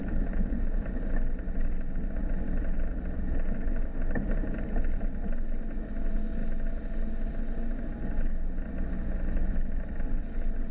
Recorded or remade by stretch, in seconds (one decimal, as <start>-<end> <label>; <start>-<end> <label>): 0.0-1.1 remade; 1.1-3.9 recorded; 3.9-4.8 remade; 4.8-10.7 recorded